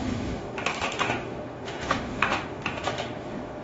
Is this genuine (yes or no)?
no